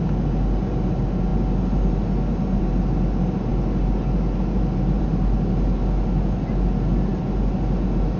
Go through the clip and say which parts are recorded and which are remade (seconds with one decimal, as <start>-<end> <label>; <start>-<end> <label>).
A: 0.0-8.2 recorded